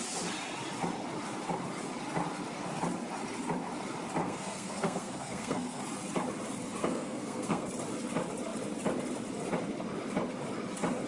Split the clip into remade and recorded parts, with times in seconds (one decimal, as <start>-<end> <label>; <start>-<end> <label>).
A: 0.0-4.2 recorded; 4.2-5.8 remade; 5.8-6.8 recorded; 6.8-7.7 remade; 7.7-11.1 recorded

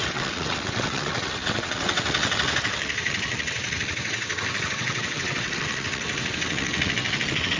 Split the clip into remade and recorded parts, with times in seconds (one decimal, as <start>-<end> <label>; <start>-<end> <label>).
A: 0.0-7.6 remade

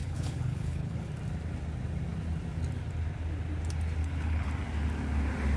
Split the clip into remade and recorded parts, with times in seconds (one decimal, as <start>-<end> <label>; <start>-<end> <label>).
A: 0.0-1.1 remade; 1.1-4.0 recorded; 4.0-4.5 remade; 4.5-5.6 recorded